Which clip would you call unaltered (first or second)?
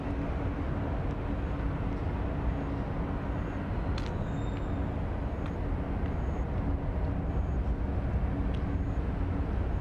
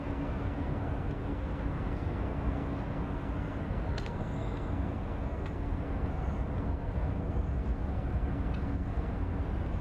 first